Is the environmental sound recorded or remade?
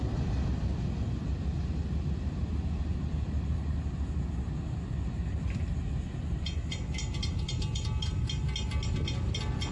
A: recorded